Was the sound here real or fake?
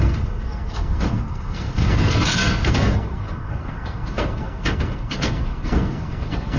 fake